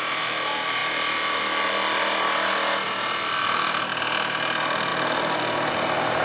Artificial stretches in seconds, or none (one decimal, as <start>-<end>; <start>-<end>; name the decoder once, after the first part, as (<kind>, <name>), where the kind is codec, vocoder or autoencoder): none